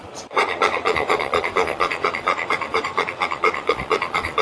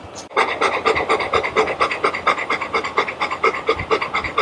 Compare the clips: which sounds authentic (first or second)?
second